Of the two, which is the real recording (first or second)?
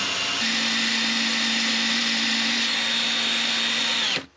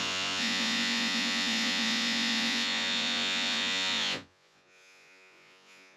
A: first